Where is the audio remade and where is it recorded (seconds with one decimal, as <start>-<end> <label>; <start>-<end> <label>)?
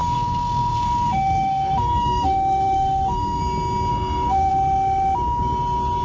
0.0-3.4 remade; 3.4-3.9 recorded; 3.9-4.5 remade; 4.5-6.0 recorded